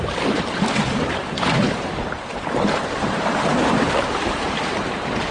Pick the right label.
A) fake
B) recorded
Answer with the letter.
A